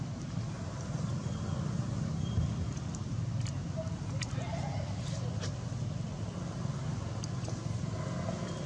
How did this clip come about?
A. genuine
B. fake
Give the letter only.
A